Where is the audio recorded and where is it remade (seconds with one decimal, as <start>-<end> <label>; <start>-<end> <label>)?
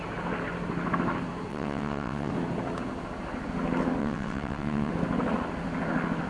0.0-1.5 recorded; 1.5-2.3 remade; 2.3-4.0 recorded; 4.0-4.9 remade; 4.9-6.3 recorded